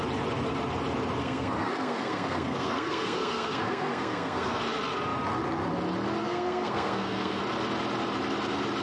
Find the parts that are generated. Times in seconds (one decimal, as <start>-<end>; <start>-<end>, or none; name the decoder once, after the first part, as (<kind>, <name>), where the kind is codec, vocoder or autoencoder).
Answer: 1.2-4.6 (codec, SNAC); 6.2-7.4